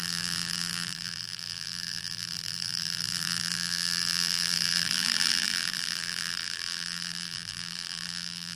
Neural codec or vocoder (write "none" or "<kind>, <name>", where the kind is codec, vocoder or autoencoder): vocoder, BigVGAN v2